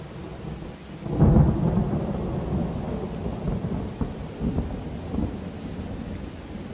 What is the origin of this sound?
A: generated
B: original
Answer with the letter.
B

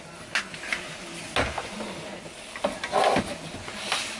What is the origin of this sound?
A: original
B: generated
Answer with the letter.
A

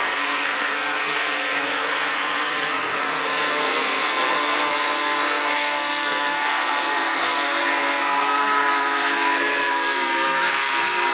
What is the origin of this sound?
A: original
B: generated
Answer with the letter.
B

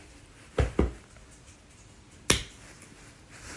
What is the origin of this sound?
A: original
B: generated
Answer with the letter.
A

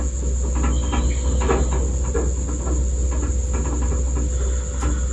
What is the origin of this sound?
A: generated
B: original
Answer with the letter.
B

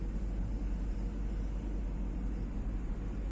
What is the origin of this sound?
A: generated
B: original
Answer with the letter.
B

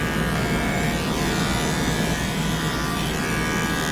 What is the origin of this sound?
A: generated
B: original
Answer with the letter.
B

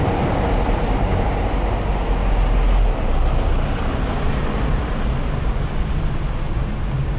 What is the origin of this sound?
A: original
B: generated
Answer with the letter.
A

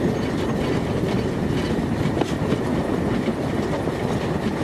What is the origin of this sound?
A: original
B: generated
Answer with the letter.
A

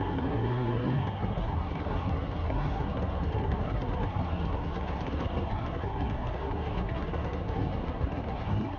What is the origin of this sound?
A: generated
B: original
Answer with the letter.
A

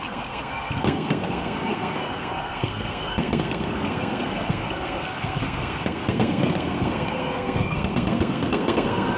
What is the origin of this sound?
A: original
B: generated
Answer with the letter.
B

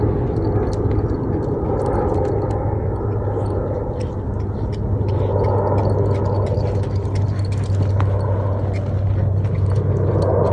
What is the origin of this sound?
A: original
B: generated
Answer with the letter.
A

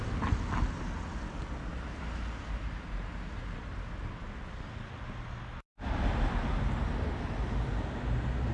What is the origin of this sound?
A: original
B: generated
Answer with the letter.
A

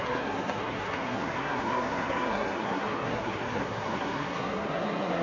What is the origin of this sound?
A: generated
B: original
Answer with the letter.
A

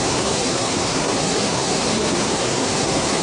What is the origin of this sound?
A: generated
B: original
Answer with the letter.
A